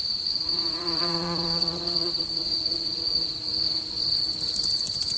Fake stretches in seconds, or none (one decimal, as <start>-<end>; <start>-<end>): 0.0-3.5; 4.7-5.2